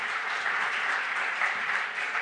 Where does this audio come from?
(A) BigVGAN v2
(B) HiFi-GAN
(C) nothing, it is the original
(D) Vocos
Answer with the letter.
A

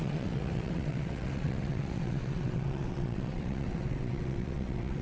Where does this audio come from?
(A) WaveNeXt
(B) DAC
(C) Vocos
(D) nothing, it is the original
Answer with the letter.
A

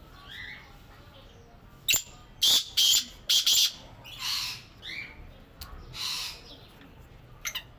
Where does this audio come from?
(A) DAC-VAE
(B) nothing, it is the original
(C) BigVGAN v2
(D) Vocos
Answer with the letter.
B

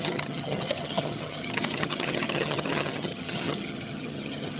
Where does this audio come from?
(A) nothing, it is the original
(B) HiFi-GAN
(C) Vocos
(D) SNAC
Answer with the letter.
B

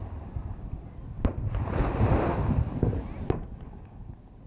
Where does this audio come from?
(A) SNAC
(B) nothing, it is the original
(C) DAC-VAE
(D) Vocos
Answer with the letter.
B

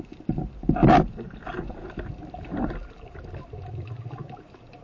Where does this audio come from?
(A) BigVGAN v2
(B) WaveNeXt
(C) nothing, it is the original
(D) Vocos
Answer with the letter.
A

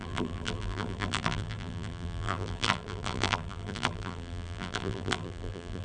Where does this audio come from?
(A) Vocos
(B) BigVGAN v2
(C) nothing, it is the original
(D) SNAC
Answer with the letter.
B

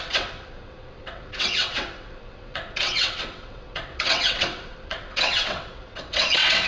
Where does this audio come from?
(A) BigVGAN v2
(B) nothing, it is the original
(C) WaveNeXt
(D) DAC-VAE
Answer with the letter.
C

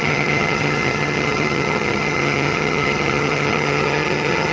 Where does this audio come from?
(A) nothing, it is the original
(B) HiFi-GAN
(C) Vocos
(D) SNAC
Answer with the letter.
B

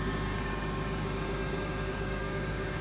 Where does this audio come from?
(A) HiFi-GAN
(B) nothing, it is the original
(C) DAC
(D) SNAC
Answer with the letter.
C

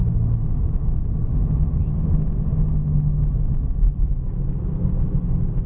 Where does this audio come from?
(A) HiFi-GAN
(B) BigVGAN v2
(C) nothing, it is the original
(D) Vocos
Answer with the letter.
C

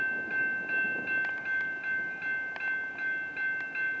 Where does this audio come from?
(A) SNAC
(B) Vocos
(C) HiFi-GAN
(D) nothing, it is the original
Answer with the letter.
D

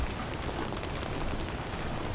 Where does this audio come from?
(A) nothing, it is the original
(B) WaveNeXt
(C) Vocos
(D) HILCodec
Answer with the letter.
A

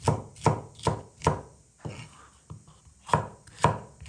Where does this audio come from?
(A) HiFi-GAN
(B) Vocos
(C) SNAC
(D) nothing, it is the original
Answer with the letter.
D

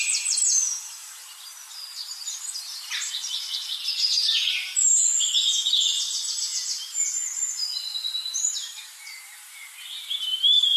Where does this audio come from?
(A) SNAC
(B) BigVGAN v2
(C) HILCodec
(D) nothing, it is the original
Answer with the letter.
B